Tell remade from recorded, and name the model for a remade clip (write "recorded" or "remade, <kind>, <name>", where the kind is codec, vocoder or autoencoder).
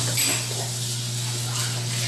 recorded